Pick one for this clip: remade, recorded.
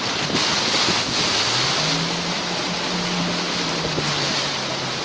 recorded